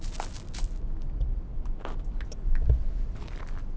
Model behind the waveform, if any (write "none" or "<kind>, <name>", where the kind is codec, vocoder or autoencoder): none